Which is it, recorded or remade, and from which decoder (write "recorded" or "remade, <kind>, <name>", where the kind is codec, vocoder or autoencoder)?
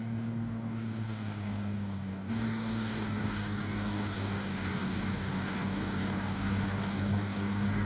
remade, codec, DAC